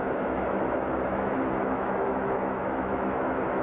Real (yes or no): no